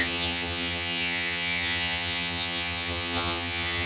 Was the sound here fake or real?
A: fake